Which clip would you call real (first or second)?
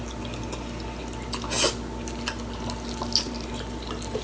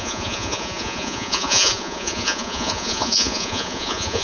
first